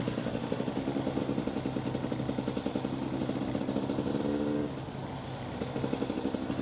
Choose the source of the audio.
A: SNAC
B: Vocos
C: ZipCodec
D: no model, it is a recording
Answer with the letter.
D